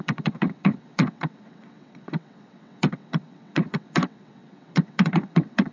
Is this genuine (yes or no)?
no